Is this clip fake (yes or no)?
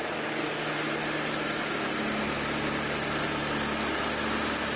no